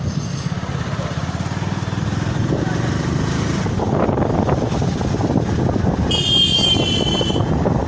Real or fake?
real